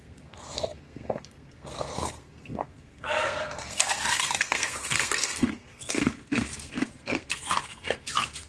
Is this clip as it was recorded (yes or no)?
no